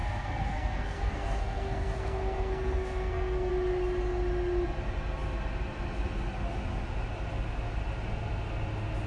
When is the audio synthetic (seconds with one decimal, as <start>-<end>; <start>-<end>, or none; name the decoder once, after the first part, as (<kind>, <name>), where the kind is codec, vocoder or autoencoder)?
0.0-3.5 (codec, SNAC)